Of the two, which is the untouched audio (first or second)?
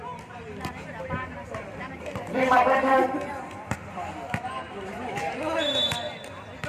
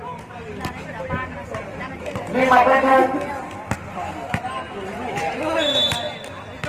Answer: second